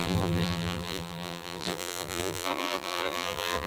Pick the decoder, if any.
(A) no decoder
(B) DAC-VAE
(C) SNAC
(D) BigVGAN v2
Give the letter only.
D